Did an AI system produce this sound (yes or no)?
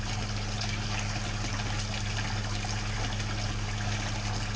no